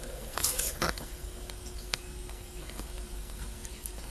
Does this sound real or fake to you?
fake